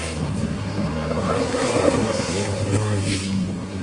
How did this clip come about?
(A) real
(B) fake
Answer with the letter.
B